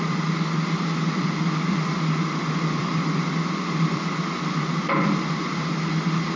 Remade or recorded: remade